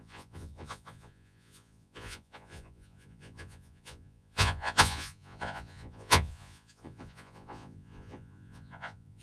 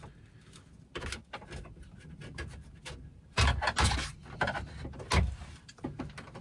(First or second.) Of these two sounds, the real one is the second